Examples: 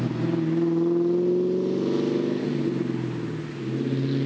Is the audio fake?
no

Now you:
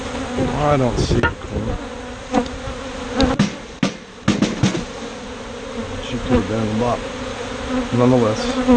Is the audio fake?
no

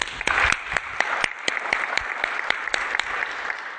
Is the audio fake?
no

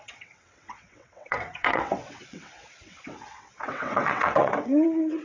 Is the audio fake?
yes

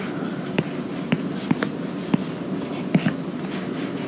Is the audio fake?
no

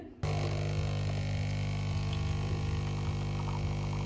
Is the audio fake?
no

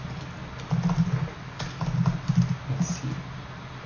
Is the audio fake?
no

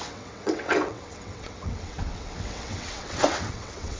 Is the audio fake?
yes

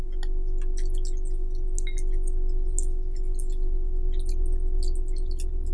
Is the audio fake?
no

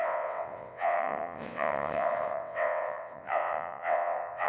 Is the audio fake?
yes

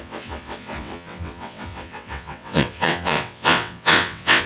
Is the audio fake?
yes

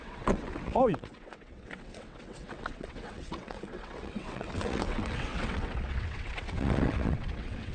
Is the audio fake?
yes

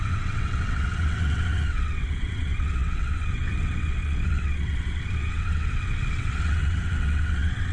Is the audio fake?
yes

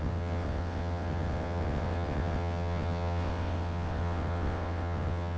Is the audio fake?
yes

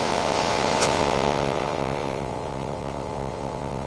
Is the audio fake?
yes